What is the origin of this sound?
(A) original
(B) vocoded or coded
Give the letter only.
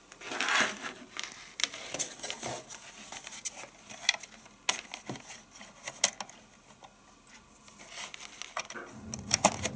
A